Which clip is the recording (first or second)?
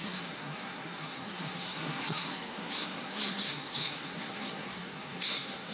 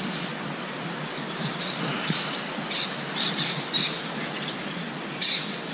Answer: second